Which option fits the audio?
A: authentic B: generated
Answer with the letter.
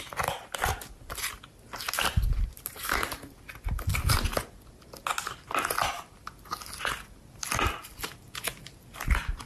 A